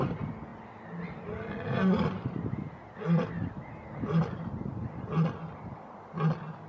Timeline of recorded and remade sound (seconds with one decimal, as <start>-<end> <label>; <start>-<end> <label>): 0.0-6.7 recorded